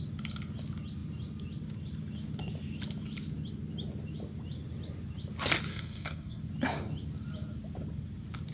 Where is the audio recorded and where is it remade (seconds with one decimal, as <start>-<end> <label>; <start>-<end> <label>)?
0.0-5.7 recorded; 5.7-6.4 remade; 6.4-8.5 recorded